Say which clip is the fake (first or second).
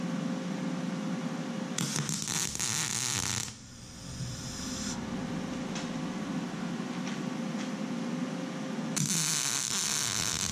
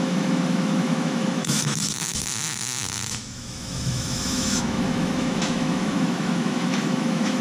second